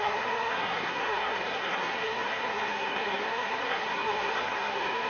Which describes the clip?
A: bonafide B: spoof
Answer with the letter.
B